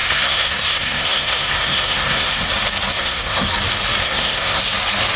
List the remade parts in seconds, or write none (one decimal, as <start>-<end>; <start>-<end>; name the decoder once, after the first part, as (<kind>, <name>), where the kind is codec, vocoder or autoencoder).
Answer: 0.0-2.5 (codec, SNAC); 2.9-3.5; 4.0-4.6